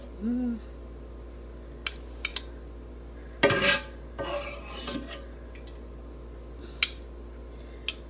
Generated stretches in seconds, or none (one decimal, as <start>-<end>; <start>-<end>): none